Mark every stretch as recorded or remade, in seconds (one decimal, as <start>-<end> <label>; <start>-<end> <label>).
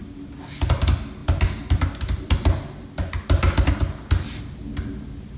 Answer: 0.0-5.4 recorded